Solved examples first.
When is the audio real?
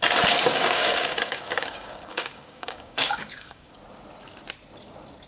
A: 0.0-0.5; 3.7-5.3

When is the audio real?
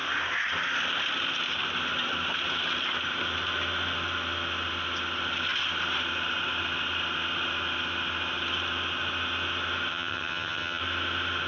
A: 0.0-9.9; 10.8-11.5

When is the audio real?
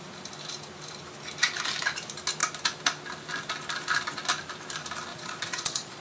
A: 0.0-5.1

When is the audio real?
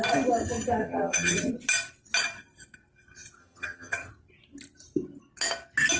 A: 0.0-0.8; 1.5-3.4; 4.1-6.0